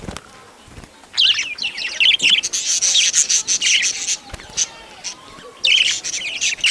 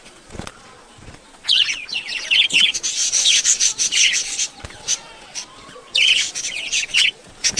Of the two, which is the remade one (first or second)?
second